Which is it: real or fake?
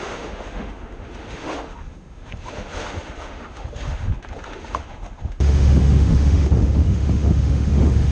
fake